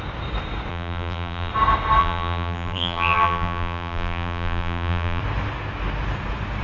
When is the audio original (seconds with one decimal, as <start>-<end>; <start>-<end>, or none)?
0.0-0.7; 1.5-2.0; 5.2-6.6